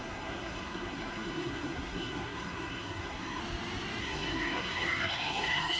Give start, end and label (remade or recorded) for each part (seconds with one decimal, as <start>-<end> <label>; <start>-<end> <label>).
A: 0.0-3.4 remade; 3.4-4.0 recorded; 4.0-5.8 remade